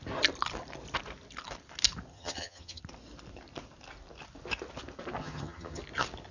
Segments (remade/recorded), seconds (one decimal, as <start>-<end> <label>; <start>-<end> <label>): 0.0-2.1 recorded; 2.1-2.8 remade; 2.8-5.2 recorded; 5.2-5.8 remade; 5.8-6.3 recorded